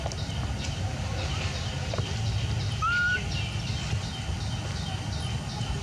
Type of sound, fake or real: real